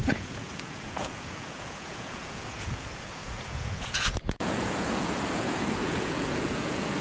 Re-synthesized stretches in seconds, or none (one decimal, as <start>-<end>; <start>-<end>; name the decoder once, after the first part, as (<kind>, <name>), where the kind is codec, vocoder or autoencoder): 0.0-7.0 (vocoder, Vocos)